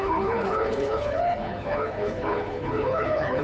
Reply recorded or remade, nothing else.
remade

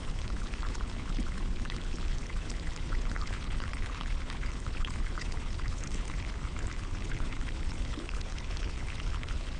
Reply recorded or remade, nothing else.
remade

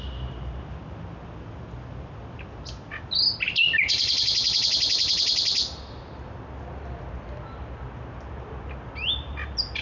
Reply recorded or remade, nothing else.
recorded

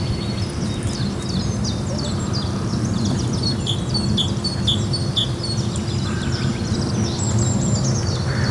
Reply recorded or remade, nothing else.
recorded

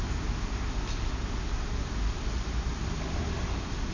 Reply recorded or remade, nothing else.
recorded